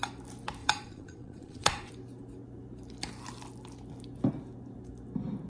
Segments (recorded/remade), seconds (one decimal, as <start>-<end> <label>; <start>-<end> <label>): 0.0-0.6 recorded; 0.6-1.9 remade; 1.9-5.5 recorded